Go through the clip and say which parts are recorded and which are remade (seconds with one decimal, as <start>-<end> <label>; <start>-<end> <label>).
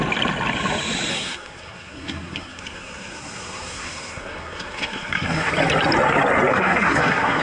0.0-1.1 recorded; 1.1-5.5 remade; 5.5-6.5 recorded; 6.5-7.4 remade